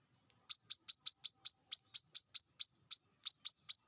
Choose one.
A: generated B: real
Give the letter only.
B